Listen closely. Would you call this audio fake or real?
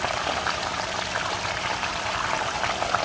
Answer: real